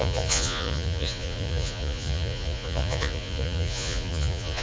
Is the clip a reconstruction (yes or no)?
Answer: yes